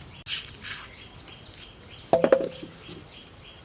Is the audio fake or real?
real